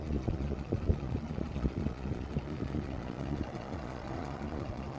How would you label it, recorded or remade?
remade